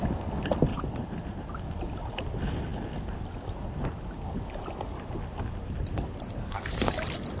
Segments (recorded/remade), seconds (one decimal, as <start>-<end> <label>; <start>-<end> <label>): 0.0-6.4 recorded; 6.4-6.9 remade; 6.9-7.4 recorded